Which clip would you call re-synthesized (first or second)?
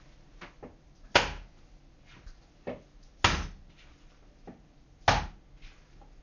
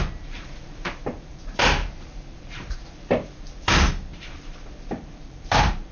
second